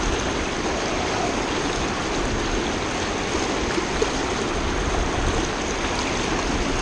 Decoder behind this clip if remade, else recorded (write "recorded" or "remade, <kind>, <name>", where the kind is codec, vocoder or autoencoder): recorded